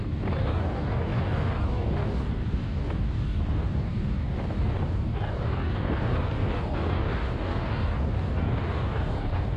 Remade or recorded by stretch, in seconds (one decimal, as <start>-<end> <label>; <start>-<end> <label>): 0.0-9.6 remade